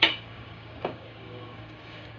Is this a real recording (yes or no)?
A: no